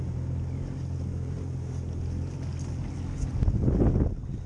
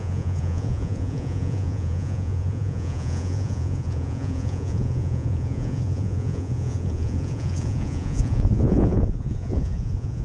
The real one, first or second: first